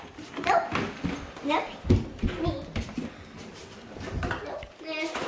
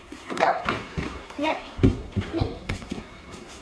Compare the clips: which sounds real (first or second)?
first